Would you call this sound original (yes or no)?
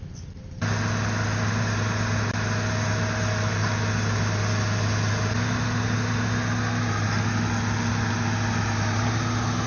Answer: yes